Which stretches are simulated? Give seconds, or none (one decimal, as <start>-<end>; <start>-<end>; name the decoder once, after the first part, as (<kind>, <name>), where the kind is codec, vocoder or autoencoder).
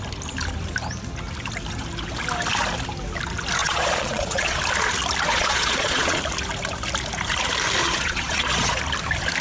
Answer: 3.6-4.6 (vocoder, Vocos); 5.3-6.2; 7.8-8.8